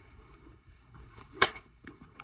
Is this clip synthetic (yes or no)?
yes